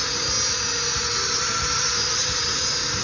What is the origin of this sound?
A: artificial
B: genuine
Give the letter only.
B